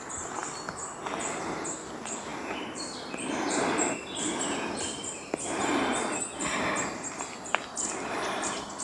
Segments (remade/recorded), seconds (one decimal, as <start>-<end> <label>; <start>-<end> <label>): 0.0-8.8 recorded